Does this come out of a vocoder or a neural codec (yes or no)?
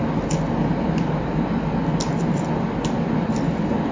no